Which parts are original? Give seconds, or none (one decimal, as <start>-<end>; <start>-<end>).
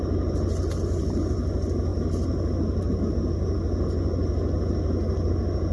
0.0-5.7